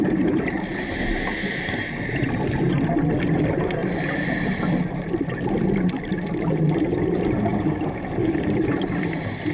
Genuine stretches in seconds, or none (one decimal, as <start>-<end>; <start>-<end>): 0.0-9.5